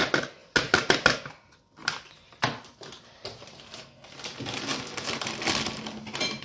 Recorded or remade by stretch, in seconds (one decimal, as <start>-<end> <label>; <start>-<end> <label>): 0.0-6.4 recorded